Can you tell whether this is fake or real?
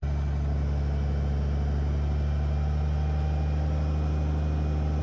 real